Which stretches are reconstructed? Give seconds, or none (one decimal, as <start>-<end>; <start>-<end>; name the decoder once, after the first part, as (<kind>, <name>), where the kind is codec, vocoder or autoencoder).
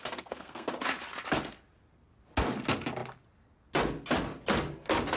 0.0-0.7 (codec, SNAC)